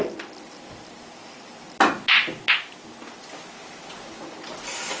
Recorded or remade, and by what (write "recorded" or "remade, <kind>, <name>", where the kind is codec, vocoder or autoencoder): recorded